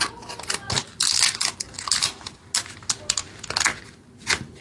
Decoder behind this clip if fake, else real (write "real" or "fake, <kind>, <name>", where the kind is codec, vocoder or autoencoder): real